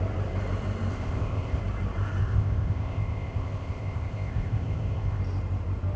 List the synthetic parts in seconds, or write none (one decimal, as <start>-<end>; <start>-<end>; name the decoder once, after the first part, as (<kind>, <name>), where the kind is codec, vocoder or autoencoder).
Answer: 0.9-1.6 (codec, ZipCodec); 2.2-5.2